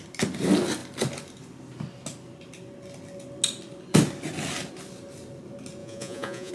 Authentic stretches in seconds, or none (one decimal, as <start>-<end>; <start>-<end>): 0.0-5.8